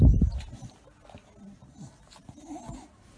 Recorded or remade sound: recorded